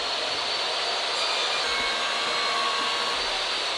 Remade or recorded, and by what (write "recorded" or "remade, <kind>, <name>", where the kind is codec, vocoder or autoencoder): recorded